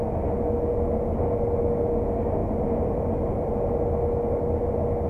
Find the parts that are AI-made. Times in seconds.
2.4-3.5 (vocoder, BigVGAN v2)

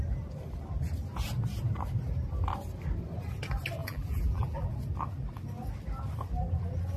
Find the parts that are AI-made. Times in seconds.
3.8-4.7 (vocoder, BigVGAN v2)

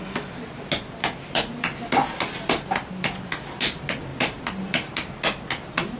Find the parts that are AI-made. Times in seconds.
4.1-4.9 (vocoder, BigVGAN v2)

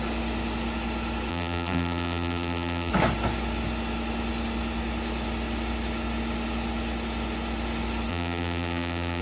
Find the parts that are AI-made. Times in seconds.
1.3-2.9 (vocoder, BigVGAN v2); 8.1-9.2

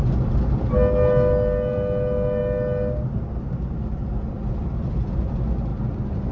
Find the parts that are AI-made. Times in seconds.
5.7-6.3 (vocoder, BigVGAN v2)

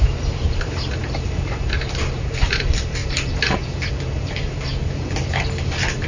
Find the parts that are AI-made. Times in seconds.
0.0-3.0 (vocoder, BigVGAN v2); 3.9-4.7